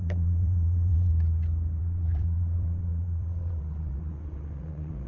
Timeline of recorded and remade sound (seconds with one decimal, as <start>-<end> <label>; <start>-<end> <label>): 0.0-1.1 remade; 1.1-1.8 recorded; 1.8-5.1 remade